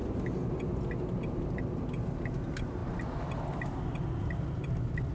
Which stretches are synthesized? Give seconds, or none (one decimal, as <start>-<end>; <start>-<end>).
none